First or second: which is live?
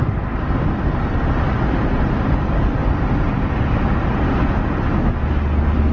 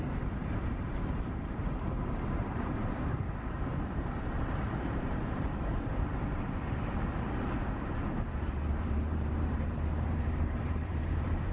first